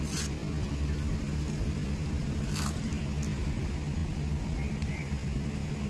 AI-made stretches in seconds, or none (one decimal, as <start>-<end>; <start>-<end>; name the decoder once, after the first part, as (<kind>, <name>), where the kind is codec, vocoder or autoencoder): none